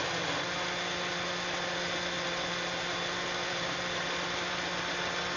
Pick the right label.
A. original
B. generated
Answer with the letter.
A